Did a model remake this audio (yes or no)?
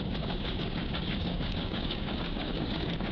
yes